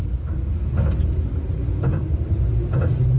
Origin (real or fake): real